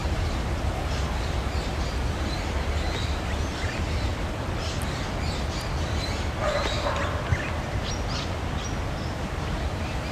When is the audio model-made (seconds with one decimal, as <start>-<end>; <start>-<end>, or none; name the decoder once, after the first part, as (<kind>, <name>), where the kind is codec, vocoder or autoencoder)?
0.0-1.2 (vocoder, BigVGAN v2)